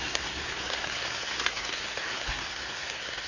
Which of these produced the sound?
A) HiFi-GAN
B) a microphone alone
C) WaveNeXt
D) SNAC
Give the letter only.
D